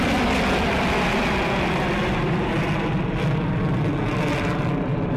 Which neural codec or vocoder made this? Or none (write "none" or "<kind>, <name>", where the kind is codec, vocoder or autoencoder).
none